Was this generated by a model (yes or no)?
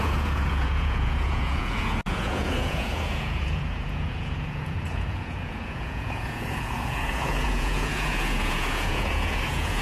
yes